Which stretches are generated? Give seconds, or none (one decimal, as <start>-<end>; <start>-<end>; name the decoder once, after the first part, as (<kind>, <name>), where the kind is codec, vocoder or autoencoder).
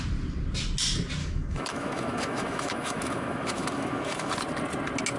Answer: 1.2-4.3 (autoencoder, DAC-VAE)